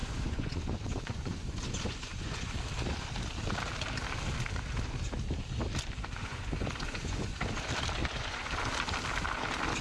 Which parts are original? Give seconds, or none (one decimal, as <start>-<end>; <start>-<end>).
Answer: 2.5-6.2; 7.4-8.0; 8.5-9.8